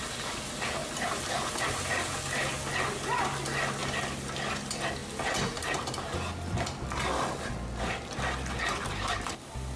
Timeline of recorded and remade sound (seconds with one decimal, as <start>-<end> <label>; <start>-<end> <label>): 0.0-9.8 recorded